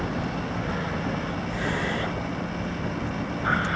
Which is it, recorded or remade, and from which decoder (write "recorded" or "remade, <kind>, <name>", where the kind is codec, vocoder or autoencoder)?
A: recorded